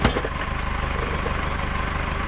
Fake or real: real